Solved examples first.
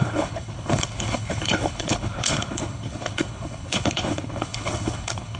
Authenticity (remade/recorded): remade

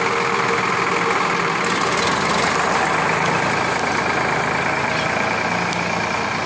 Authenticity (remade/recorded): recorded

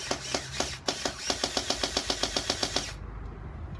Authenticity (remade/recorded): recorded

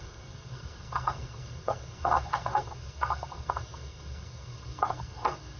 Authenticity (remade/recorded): remade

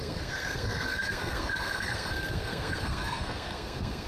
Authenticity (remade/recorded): remade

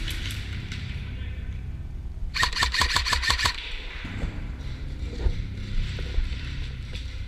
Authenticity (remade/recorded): remade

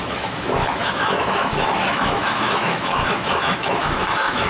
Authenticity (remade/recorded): remade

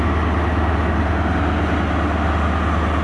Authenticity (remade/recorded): recorded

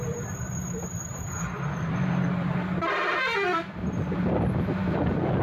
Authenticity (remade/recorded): remade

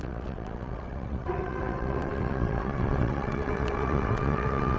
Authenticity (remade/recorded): remade